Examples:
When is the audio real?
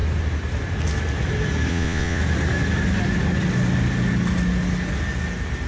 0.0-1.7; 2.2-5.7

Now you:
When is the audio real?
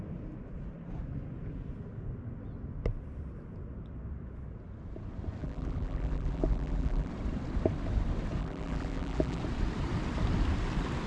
0.0-5.4; 7.1-8.4; 9.4-11.1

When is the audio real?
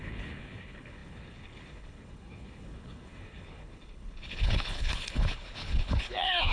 none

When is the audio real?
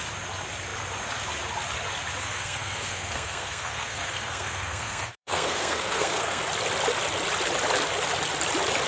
0.0-2.2; 6.4-8.9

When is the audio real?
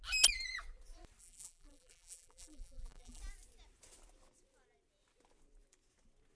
0.0-1.2; 3.2-6.3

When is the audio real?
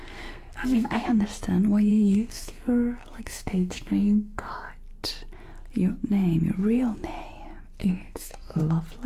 1.2-1.9; 4.7-7.8; 8.6-9.1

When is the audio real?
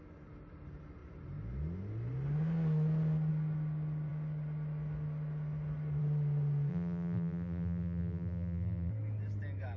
0.0-6.7; 8.9-9.8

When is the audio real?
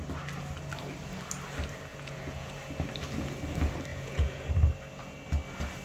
0.0-1.9; 2.5-3.9; 4.5-5.8